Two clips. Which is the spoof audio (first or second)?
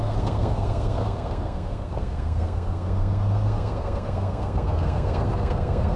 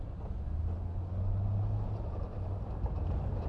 first